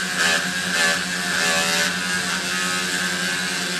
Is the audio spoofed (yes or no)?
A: no